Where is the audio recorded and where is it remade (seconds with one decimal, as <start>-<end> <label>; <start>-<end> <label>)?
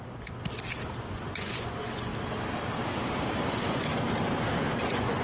0.0-1.0 recorded; 1.0-2.1 remade; 2.1-3.5 recorded; 3.5-3.9 remade; 3.9-4.8 recorded; 4.8-5.2 remade